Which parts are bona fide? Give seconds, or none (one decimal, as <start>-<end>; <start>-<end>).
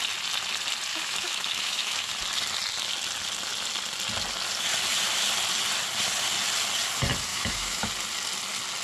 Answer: 0.0-0.9; 2.1-7.3; 7.9-8.8